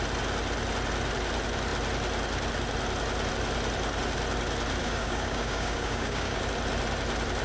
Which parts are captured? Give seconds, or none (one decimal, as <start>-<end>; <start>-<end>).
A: 0.0-4.8; 6.4-7.4